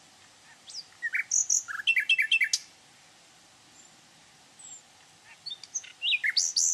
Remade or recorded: recorded